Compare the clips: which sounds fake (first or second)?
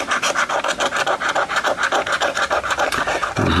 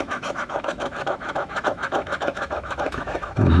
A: second